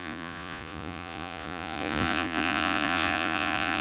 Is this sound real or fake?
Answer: fake